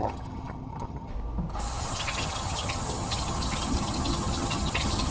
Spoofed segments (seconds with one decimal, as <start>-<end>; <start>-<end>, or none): 0.0-1.1; 1.8-5.1